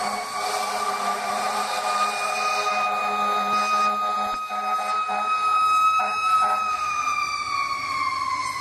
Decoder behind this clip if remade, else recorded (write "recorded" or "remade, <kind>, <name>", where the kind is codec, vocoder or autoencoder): remade, vocoder, BigVGAN v2